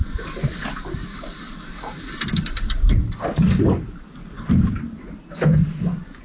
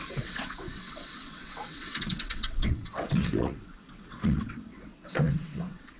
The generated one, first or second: second